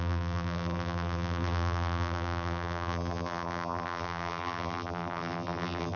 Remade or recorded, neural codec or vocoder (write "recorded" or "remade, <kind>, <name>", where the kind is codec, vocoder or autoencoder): remade, vocoder, BigVGAN v2